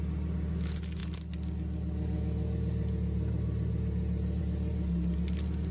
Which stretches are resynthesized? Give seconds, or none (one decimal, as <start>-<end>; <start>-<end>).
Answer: none

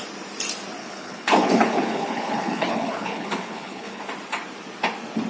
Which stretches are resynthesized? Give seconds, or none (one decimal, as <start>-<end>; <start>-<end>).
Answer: 0.8-4.0

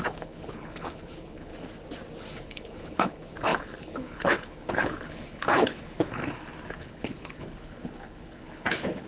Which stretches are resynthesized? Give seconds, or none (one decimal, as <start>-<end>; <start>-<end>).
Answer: 0.0-1.5; 2.3-6.2; 6.7-9.1

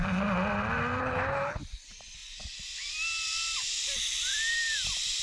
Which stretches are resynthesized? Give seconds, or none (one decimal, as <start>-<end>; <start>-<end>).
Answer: 1.0-1.6

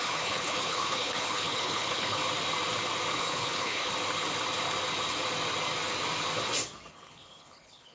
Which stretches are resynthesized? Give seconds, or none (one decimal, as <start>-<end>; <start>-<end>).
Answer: 0.0-2.2; 3.2-3.9; 6.9-7.9

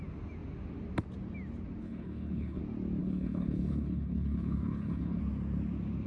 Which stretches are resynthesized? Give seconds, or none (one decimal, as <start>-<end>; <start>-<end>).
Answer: 1.8-2.6; 3.0-5.2